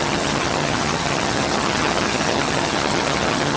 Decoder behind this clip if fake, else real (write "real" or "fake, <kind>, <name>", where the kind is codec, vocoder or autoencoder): fake, vocoder, HiFi-GAN